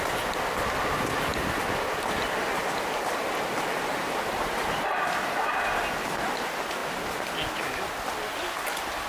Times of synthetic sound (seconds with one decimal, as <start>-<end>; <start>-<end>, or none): 3.9-5.8